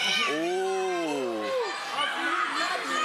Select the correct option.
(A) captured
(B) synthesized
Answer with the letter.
A